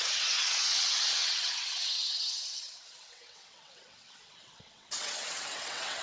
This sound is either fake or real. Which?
fake